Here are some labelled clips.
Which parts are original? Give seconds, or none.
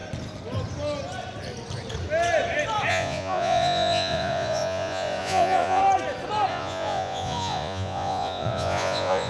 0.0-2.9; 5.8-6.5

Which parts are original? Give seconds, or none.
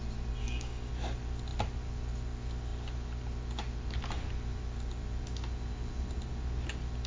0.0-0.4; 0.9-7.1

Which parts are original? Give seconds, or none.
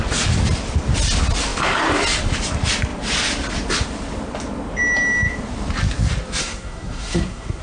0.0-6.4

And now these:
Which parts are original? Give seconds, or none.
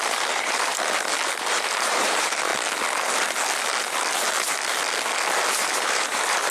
0.7-1.5; 2.5-5.5